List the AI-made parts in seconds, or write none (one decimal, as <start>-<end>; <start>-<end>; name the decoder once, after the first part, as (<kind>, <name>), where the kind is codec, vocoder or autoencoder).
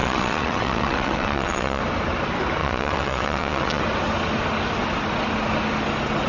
0.0-1.8 (vocoder, WaveNeXt); 2.6-3.8